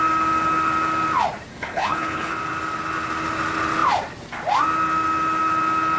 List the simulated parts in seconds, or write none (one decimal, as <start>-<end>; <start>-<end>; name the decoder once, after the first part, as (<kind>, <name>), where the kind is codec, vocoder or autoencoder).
1.5-2.3 (codec, HILCodec)